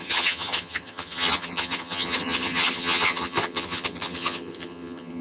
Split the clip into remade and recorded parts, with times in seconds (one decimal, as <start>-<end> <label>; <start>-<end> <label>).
0.0-5.2 remade